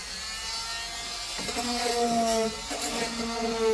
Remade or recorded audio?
recorded